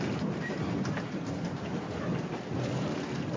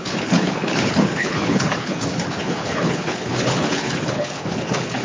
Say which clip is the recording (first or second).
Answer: first